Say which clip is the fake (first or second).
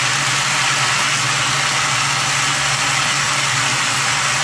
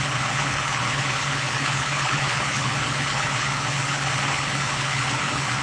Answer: second